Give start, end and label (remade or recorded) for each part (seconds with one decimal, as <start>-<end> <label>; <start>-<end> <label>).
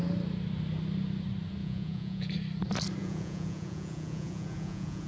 0.0-1.6 recorded; 1.6-2.3 remade; 2.3-3.0 recorded; 3.0-5.1 remade